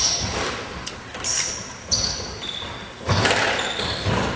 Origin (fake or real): real